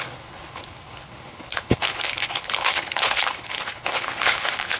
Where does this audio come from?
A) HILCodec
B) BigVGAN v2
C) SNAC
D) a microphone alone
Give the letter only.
A